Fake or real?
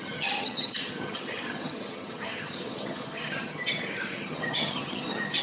fake